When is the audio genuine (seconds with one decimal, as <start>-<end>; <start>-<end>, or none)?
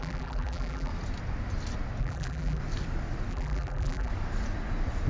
0.9-2.0; 2.6-3.3; 4.1-5.1